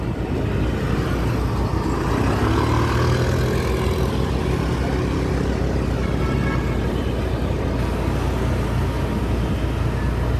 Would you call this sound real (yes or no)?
yes